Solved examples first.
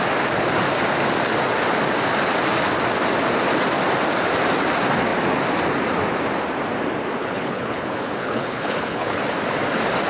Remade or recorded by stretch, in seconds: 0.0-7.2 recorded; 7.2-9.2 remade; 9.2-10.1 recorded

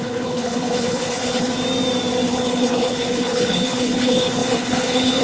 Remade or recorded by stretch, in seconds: 0.0-1.5 remade; 1.5-2.3 recorded; 2.3-5.2 remade